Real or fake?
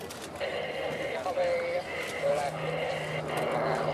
real